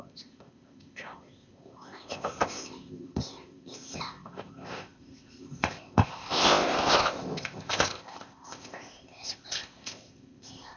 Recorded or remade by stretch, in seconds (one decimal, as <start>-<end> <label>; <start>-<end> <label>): 0.0-10.8 remade